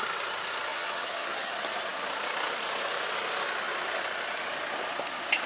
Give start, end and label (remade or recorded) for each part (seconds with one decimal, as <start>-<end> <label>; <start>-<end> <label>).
0.0-0.7 recorded; 0.7-1.5 remade; 1.5-5.5 recorded